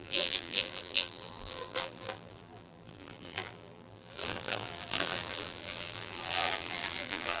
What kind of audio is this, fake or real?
fake